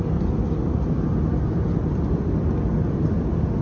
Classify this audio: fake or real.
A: real